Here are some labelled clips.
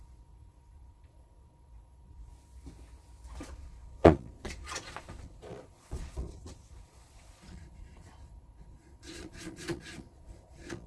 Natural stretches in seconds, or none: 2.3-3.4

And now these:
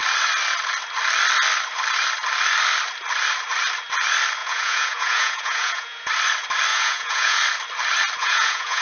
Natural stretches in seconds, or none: 0.0-4.4; 6.1-6.7; 7.4-8.2

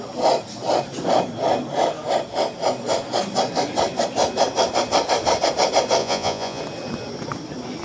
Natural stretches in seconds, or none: 0.0-6.0; 6.6-7.8

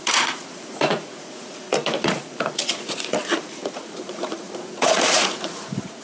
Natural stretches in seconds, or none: none